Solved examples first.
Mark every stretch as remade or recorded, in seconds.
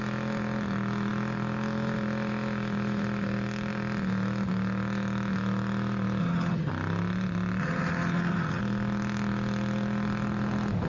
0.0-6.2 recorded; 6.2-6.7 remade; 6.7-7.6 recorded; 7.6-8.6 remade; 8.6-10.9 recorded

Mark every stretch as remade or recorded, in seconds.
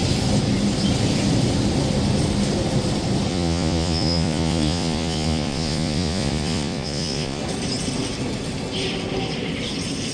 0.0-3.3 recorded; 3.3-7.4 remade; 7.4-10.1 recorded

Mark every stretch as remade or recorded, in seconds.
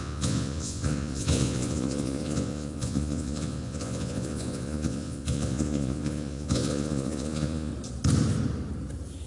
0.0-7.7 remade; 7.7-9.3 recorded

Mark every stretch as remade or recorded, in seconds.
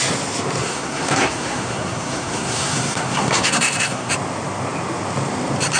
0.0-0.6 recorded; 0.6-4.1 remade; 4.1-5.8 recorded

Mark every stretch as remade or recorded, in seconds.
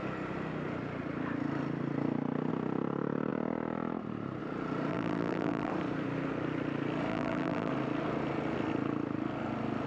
0.0-4.9 recorded; 4.9-5.7 remade; 5.7-7.1 recorded; 7.1-7.7 remade; 7.7-9.9 recorded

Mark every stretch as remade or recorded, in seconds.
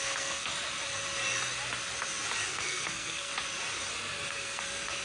0.0-0.5 remade; 0.5-2.5 recorded; 2.5-3.3 remade; 3.3-4.3 recorded; 4.3-5.0 remade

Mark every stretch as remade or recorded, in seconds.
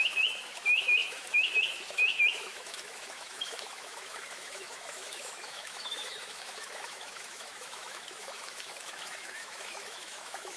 0.0-10.6 remade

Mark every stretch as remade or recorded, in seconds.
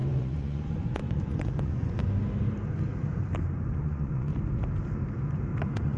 0.0-2.0 remade; 2.0-3.7 recorded; 3.7-4.3 remade; 4.3-5.6 recorded; 5.6-6.0 remade